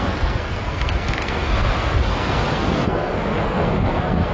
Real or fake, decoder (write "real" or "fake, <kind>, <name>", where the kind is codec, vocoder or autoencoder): fake, codec, SNAC